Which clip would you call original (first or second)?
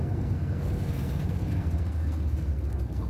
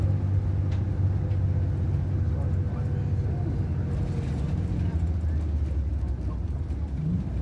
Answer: second